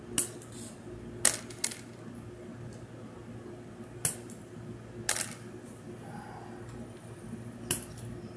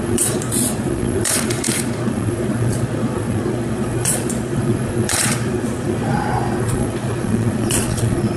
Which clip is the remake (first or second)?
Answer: second